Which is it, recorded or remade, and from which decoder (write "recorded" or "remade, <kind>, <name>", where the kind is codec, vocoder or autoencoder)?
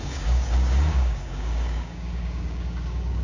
remade, codec, DAC